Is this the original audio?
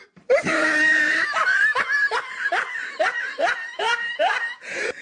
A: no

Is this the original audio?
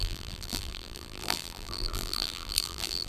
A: no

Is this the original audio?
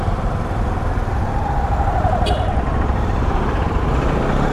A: no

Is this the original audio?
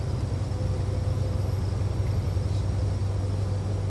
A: yes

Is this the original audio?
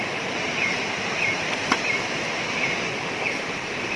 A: no